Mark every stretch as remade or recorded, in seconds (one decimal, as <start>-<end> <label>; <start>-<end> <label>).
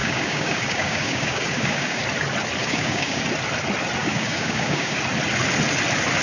0.0-2.0 remade; 2.0-2.6 recorded; 2.6-3.2 remade; 3.2-4.0 recorded; 4.0-5.0 remade; 5.0-6.2 recorded